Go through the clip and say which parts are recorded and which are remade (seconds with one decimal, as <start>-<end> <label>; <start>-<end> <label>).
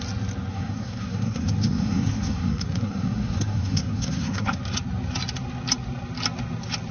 0.0-0.5 recorded; 0.5-4.6 remade; 4.6-6.9 recorded